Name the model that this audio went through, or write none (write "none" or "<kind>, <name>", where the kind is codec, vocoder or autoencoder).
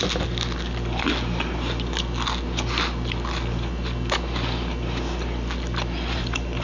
none